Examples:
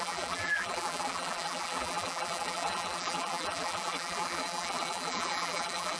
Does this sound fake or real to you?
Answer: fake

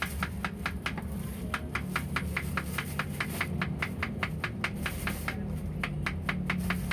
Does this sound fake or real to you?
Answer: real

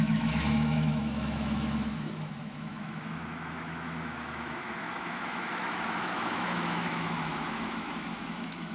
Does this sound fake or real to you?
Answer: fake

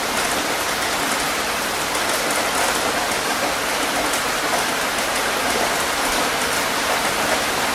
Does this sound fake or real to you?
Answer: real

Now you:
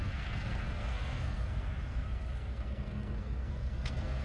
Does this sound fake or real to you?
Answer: fake